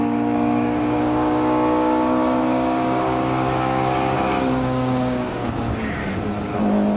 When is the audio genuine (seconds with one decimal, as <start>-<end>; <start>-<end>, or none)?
6.0-7.0